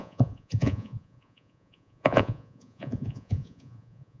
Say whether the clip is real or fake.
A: fake